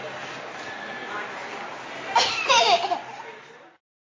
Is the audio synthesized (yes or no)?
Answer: no